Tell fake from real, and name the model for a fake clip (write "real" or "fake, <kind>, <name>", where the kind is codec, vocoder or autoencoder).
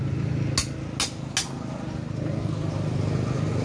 real